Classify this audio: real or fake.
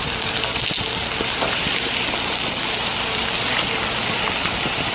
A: real